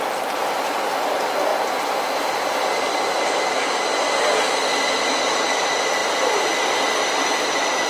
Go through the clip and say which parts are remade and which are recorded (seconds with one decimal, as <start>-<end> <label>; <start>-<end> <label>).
0.0-7.9 recorded